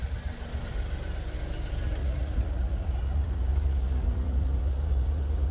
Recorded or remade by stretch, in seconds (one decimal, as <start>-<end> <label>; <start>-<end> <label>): 0.0-2.0 recorded; 2.0-5.5 remade